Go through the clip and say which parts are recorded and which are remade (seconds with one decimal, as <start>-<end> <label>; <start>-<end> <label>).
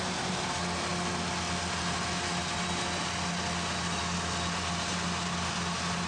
0.0-6.1 recorded